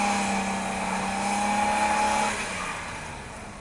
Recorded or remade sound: recorded